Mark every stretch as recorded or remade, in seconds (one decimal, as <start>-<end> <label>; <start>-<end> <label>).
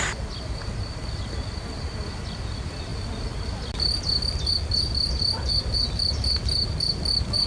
0.0-7.5 recorded